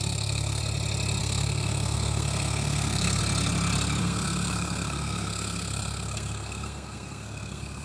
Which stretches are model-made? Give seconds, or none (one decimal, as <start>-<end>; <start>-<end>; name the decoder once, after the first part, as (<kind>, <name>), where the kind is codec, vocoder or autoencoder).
0.0-0.6 (codec, SNAC); 1.2-3.2; 4.0-7.8